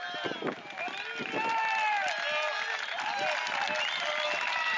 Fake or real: real